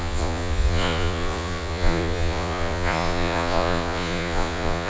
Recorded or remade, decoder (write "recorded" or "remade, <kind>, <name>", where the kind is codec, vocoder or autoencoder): remade, vocoder, Vocos